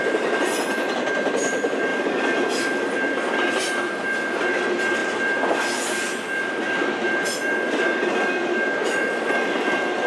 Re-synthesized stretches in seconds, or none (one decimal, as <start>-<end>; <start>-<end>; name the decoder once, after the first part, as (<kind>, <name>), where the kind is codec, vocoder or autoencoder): 1.9-3.5 (vocoder, BigVGAN v2); 5.0-5.6; 6.8-9.0